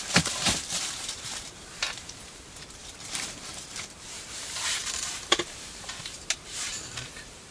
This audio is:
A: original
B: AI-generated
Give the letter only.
B